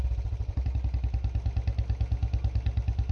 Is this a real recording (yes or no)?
yes